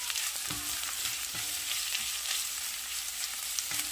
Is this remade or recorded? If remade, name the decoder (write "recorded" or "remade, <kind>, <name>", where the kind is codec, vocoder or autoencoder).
remade, vocoder, BigVGAN v2